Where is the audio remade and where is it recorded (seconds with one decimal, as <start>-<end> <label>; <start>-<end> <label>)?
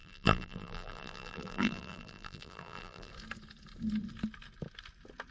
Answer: 0.0-3.1 remade; 3.1-5.3 recorded